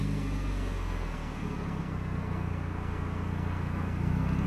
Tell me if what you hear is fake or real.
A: fake